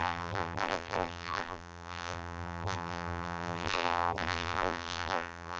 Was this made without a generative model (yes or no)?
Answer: no